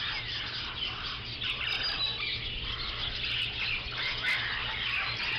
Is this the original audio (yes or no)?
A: yes